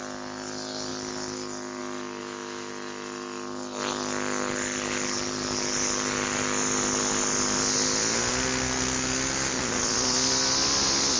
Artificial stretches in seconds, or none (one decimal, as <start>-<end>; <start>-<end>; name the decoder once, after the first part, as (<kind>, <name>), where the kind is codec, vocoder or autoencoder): 2.2-2.7 (autoencoder, DAC-VAE)